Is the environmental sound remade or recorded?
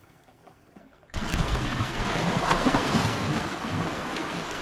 remade